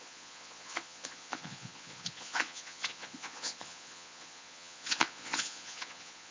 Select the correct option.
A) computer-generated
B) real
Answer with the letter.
A